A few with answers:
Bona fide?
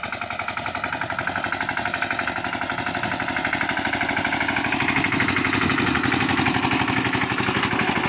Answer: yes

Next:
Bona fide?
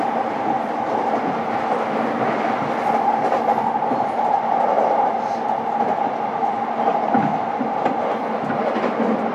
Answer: yes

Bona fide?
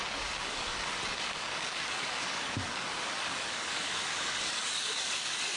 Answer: no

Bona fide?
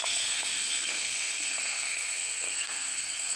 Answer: no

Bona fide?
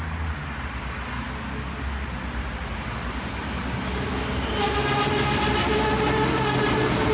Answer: yes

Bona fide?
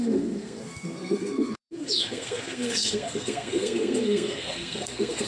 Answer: no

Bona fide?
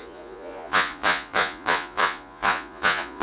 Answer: no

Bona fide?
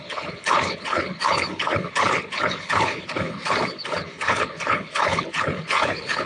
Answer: no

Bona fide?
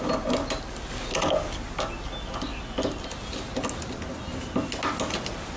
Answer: yes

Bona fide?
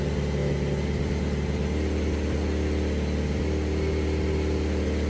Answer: yes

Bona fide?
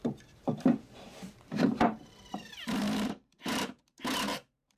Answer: no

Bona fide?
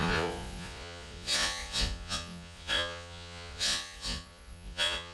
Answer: no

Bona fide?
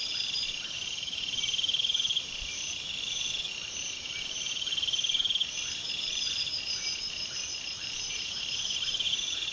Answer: no